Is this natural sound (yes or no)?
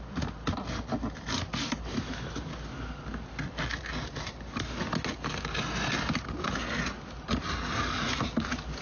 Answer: yes